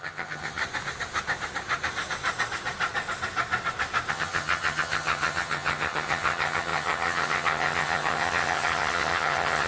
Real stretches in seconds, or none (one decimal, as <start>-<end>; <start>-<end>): 0.6-4.1